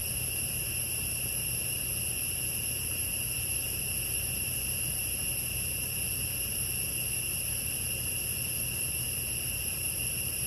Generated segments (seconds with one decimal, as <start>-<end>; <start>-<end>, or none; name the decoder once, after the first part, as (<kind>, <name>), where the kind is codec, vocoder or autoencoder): none